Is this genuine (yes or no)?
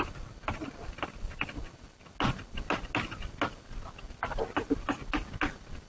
yes